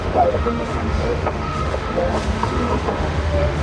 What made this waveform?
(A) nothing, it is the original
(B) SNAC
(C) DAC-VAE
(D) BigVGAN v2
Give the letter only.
C